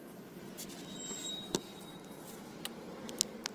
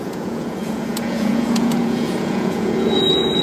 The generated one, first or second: second